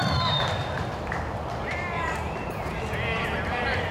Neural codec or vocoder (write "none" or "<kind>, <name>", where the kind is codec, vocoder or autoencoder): none